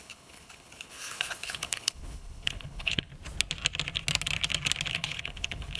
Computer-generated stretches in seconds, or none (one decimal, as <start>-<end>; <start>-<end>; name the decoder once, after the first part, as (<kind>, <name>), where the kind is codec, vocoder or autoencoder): 0.0-3.1 (codec, HILCodec); 4.9-5.8